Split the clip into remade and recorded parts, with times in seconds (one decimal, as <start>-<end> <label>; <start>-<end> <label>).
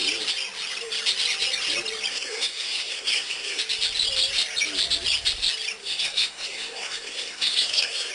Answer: 0.0-2.1 recorded; 2.1-3.6 remade; 3.6-5.8 recorded; 5.8-8.1 remade